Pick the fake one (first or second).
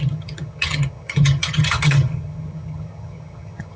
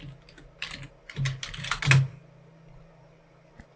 first